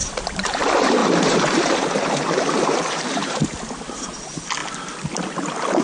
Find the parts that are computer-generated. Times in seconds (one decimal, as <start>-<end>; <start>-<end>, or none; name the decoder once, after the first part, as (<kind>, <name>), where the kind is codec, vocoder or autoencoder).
0.0-0.6 (vocoder, BigVGAN v2); 1.0-3.4